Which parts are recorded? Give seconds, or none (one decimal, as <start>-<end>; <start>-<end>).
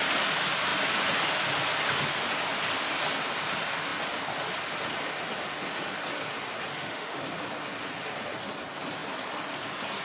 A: 0.0-6.7; 7.2-10.0